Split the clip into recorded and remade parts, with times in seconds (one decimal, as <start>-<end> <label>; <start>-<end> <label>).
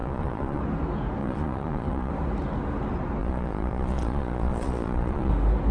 0.0-0.6 remade; 0.6-1.2 recorded; 1.2-2.1 remade; 2.1-3.2 recorded; 3.2-5.3 remade; 5.3-5.7 recorded